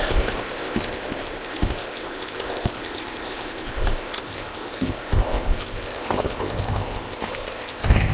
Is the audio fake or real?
fake